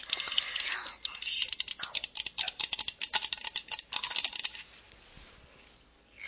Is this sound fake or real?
real